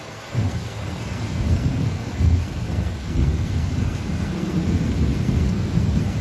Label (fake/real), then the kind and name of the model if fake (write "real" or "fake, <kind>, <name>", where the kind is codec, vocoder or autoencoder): fake, codec, SNAC